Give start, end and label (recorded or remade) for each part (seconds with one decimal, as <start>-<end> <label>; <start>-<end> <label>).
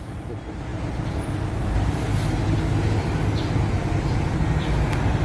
0.0-5.2 recorded